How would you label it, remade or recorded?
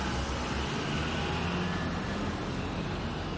recorded